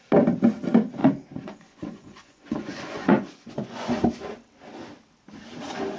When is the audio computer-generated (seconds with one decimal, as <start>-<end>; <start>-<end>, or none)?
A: 1.0-4.0